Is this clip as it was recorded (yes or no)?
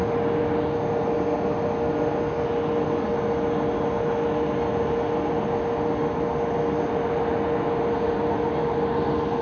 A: yes